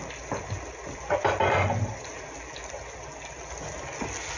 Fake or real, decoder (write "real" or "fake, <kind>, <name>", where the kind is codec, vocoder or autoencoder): real